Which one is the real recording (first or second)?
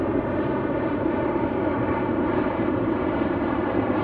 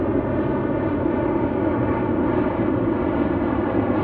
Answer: second